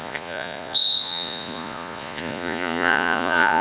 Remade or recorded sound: remade